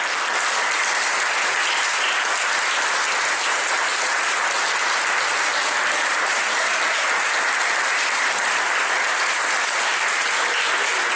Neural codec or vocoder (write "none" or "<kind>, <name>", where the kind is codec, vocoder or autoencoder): none